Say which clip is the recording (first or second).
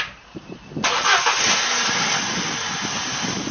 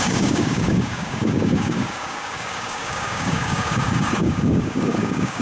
first